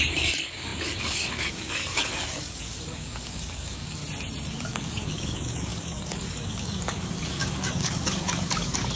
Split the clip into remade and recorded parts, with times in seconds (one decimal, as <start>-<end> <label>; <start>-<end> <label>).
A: 0.0-4.0 remade; 4.0-4.5 recorded; 4.5-9.0 remade